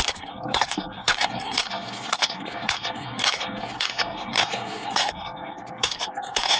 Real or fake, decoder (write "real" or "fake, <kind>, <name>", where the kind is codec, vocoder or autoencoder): fake, codec, SNAC